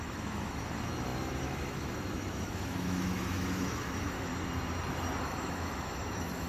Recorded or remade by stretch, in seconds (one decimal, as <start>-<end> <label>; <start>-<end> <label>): 0.0-4.3 remade; 4.3-5.2 recorded; 5.2-6.5 remade